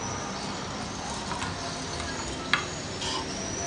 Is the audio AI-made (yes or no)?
no